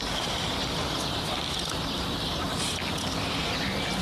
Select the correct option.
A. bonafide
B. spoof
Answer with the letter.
A